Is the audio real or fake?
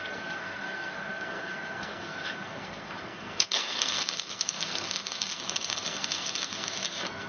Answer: fake